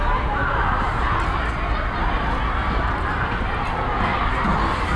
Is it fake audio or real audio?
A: real